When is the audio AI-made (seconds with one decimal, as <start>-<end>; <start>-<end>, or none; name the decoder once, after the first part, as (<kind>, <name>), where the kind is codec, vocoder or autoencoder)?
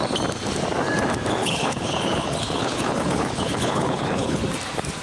1.4-4.4 (codec, HILCodec)